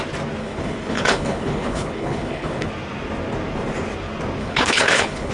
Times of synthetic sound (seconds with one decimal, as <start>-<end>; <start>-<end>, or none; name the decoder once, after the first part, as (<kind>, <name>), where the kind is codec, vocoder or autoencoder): 0.4-2.7 (codec, HILCodec); 4.4-5.3